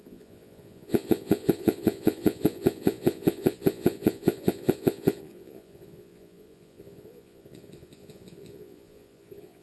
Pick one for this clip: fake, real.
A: fake